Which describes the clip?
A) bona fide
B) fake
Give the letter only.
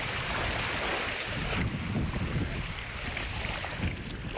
A